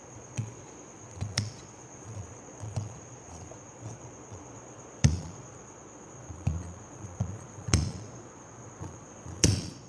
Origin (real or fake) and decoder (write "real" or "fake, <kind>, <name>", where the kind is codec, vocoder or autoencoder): fake, vocoder, Vocos